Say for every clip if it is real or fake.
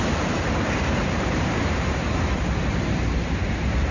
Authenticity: fake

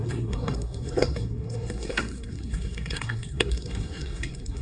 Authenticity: fake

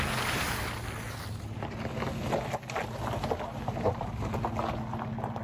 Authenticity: real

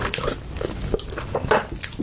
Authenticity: real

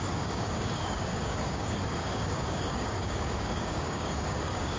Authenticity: fake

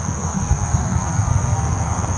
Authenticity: fake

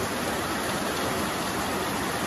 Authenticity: real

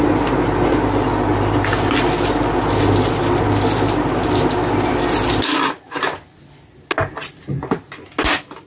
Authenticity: real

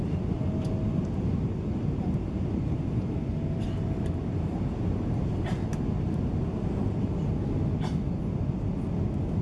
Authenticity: real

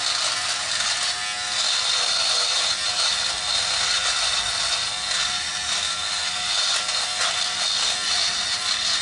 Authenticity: real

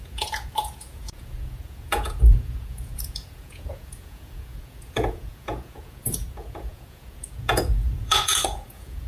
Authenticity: fake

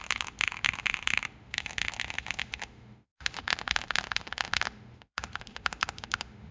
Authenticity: fake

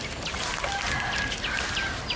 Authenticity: real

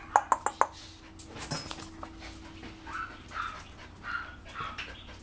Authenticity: real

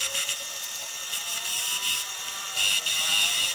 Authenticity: real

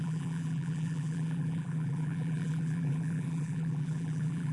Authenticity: fake